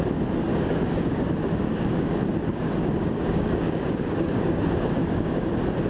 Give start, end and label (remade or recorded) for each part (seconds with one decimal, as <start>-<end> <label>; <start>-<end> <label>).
0.0-0.5 recorded; 0.5-2.1 remade; 2.1-2.5 recorded; 2.5-5.5 remade; 5.5-5.9 recorded